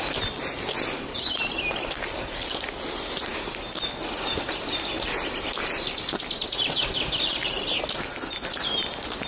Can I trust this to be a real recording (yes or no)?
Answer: yes